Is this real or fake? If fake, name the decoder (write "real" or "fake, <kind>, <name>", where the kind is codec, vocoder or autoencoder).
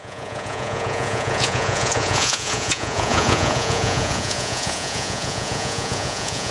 fake, vocoder, Vocos